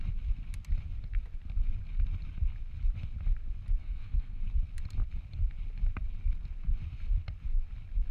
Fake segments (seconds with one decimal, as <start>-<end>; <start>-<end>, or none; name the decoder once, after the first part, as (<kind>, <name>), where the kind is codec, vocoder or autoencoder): 3.8-4.4 (codec, SNAC)